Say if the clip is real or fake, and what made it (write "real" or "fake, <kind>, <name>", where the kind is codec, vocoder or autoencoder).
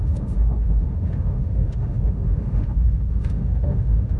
fake, autoencoder, DAC-VAE